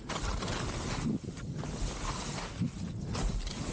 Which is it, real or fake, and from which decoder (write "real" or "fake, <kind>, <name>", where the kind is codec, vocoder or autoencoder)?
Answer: real